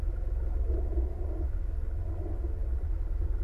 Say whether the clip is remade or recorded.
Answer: recorded